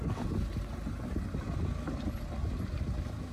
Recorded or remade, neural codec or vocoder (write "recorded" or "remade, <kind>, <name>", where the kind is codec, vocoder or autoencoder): recorded